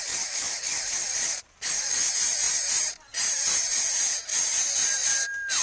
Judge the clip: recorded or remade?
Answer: recorded